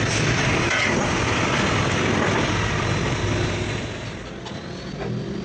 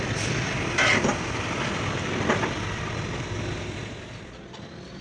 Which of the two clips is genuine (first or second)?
first